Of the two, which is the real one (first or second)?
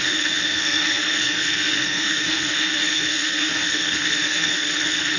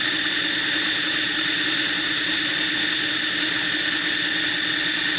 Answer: second